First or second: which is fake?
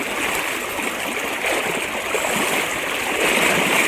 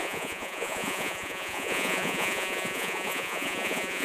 second